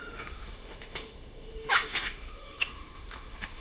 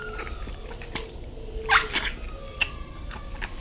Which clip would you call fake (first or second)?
first